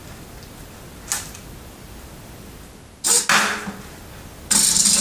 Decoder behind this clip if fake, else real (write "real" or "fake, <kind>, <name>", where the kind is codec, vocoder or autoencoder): real